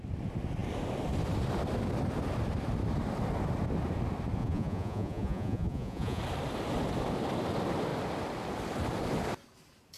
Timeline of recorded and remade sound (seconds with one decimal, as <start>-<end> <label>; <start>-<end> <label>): 0.0-4.4 recorded; 4.4-6.2 remade; 6.2-10.0 recorded